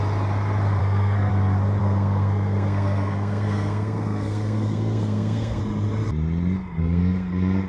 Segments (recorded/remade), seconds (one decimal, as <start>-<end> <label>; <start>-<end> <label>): 0.0-0.8 recorded; 0.8-1.3 remade; 1.3-1.8 recorded; 1.8-5.6 remade; 5.6-6.8 recorded; 6.8-7.7 remade